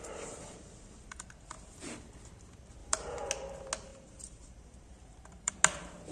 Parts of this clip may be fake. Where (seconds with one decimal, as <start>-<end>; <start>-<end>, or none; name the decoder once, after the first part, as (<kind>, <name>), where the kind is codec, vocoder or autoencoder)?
0.0-1.8 (vocoder, BigVGAN v2); 2.8-3.3; 3.9-5.5